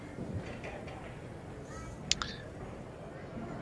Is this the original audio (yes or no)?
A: yes